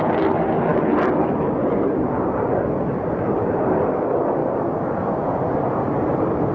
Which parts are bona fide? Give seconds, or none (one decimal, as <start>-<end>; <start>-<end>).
0.7-2.1